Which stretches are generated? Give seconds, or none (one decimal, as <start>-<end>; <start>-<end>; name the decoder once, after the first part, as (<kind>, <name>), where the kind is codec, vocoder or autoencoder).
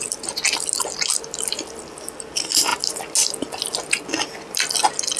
none